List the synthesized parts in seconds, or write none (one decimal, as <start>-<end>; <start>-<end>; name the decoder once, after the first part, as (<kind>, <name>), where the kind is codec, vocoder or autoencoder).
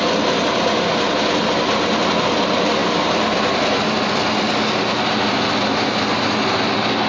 none